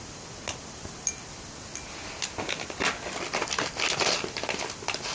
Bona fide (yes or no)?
yes